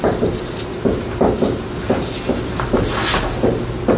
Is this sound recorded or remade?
recorded